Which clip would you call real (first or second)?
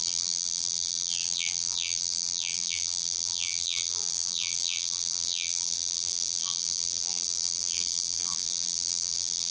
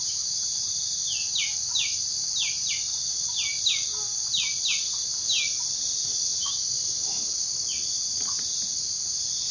second